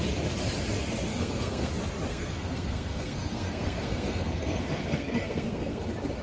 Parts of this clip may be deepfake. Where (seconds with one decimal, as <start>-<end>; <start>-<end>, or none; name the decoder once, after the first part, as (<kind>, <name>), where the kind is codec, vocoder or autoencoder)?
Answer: 1.1-1.7 (codec, SNAC); 2.1-5.8